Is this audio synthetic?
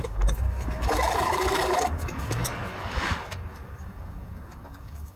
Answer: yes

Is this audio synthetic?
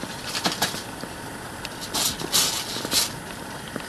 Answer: no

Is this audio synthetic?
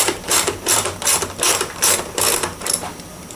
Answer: yes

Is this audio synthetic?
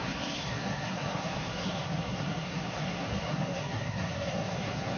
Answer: yes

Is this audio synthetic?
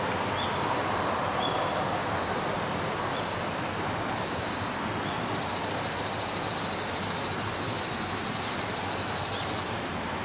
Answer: no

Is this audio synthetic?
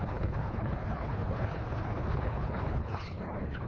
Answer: yes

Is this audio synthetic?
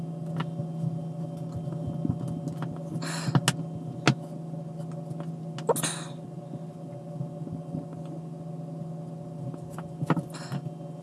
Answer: no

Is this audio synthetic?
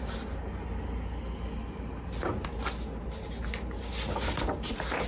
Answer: no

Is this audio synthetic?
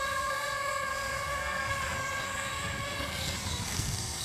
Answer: yes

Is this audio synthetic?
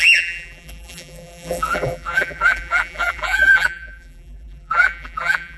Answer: yes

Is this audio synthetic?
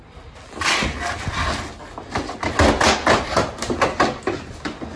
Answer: no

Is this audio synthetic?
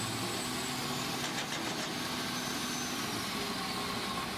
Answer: no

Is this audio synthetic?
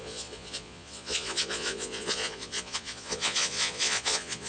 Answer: yes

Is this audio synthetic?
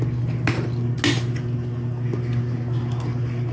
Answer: no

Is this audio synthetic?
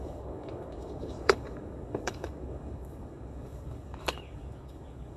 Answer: yes